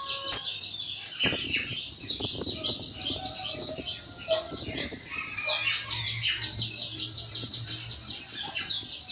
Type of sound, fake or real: real